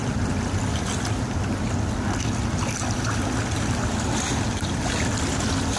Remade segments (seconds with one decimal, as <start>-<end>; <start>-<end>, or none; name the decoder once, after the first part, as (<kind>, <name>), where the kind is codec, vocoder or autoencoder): none